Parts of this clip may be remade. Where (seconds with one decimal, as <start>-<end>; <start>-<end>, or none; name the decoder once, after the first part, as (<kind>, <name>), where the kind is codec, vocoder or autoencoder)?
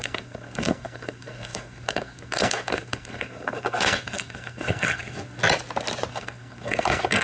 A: 0.0-5.4 (codec, SNAC); 6.1-7.2